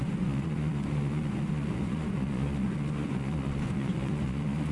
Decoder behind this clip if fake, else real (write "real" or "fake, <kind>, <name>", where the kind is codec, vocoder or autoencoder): fake, vocoder, Vocos